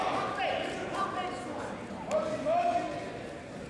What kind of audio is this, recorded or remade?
recorded